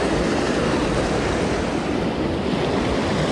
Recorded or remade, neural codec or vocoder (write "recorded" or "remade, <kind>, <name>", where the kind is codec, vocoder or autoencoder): recorded